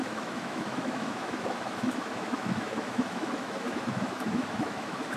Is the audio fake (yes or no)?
yes